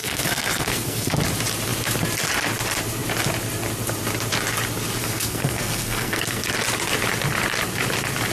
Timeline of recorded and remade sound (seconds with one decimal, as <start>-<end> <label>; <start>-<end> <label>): 0.0-1.2 remade; 1.2-5.0 recorded; 5.0-6.4 remade; 6.4-8.3 recorded